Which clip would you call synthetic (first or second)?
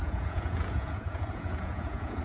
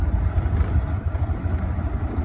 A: first